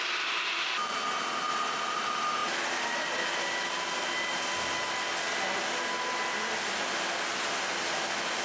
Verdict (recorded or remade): recorded